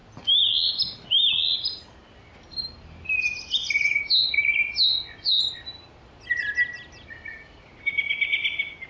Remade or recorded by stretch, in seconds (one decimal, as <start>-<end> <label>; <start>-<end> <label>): 0.0-4.0 remade; 4.0-5.3 recorded; 5.3-7.6 remade; 7.6-8.9 recorded